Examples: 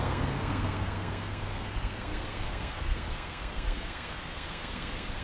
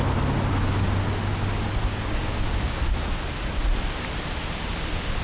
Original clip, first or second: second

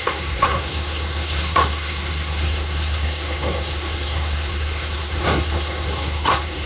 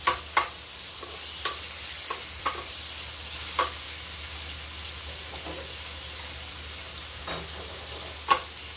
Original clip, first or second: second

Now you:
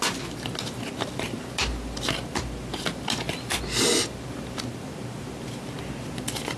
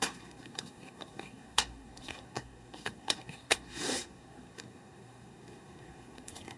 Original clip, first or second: first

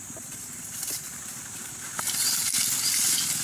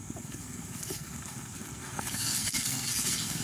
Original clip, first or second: first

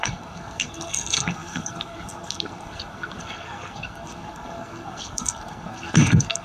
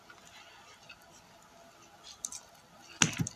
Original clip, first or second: second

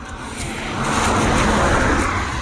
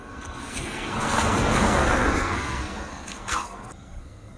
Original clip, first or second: first